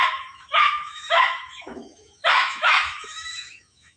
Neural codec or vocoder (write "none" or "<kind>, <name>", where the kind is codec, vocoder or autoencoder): autoencoder, DAC-VAE